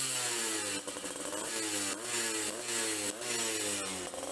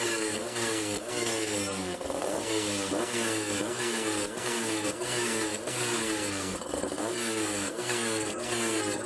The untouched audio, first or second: first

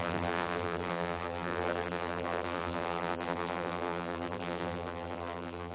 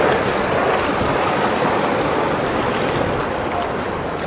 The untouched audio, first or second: second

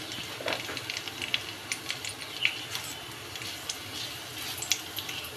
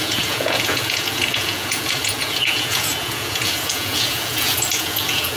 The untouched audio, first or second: first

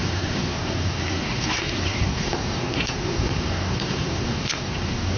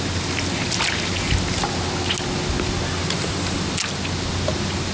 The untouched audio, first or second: second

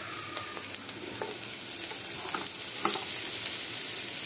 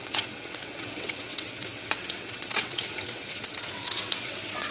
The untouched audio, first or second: first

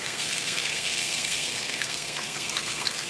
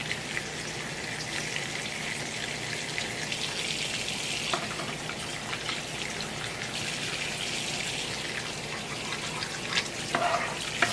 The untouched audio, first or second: second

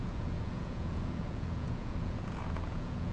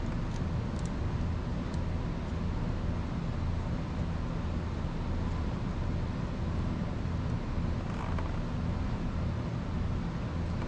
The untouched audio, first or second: second